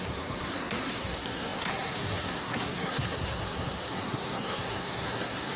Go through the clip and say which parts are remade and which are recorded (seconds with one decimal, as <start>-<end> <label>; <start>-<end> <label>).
0.0-5.6 remade